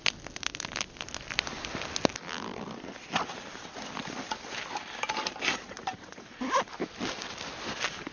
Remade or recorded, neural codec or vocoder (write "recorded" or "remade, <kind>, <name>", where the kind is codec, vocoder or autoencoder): recorded